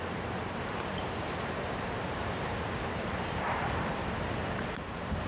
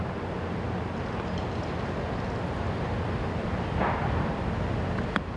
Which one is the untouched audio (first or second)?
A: second